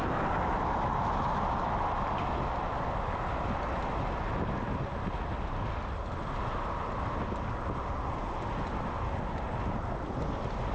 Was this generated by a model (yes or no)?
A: no